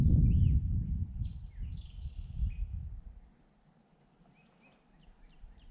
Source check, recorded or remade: recorded